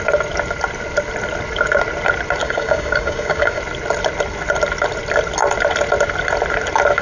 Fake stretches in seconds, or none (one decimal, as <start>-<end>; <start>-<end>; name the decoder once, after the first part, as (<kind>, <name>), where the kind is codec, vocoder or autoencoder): 2.4-3.6 (codec, DAC)